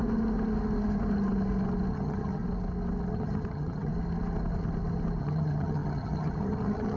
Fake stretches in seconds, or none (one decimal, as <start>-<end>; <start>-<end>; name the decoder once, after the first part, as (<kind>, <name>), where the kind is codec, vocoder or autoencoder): 1.9-2.4 (vocoder, HiFi-GAN); 3.1-3.9; 5.2-7.0